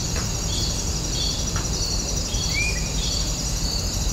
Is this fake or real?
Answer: fake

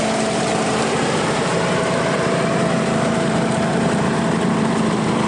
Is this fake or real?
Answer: fake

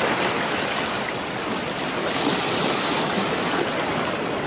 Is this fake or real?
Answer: real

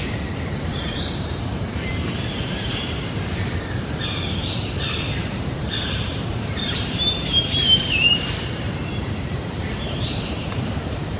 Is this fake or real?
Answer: fake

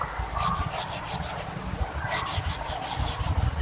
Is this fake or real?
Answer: fake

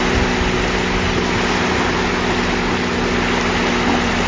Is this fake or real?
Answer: real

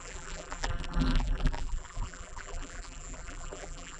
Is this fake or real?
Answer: fake